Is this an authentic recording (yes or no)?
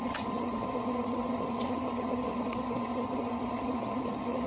no